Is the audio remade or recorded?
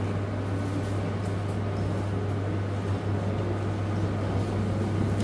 recorded